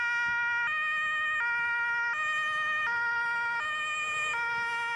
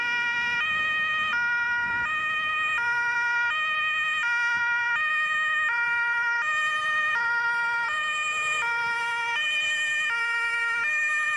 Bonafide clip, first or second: first